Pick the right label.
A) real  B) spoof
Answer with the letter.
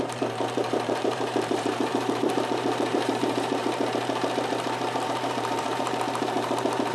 B